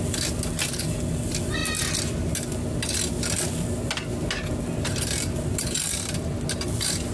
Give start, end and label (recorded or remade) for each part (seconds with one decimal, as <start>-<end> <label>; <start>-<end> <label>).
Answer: 0.0-7.1 recorded